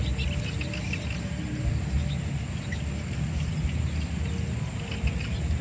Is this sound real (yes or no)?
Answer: yes